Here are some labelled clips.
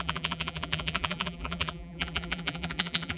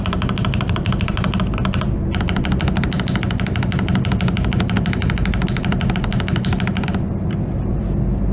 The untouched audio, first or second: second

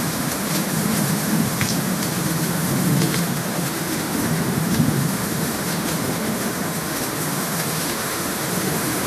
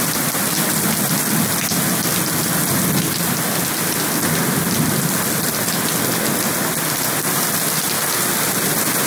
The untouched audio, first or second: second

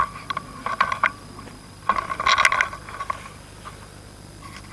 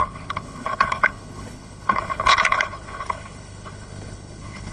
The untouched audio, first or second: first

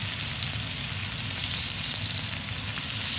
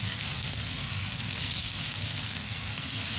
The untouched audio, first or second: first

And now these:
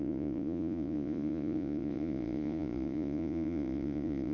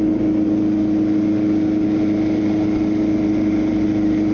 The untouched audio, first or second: second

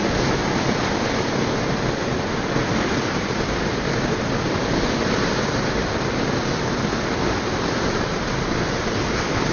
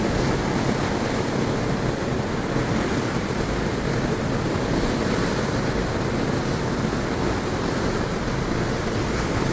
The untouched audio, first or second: second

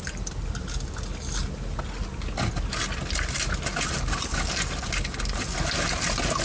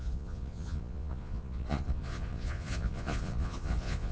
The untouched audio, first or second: first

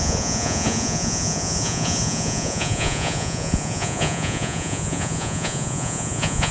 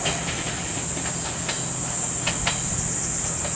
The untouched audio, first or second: second